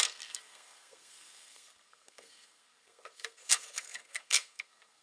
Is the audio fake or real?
fake